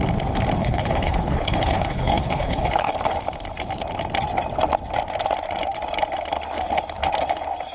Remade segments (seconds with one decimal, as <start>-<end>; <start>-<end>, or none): 0.6-2.9